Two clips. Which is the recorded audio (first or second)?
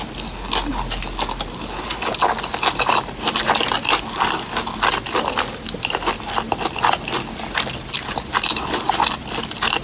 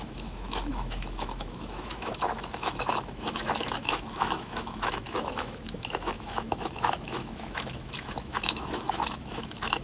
first